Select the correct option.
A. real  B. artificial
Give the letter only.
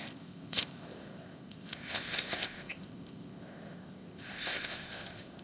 B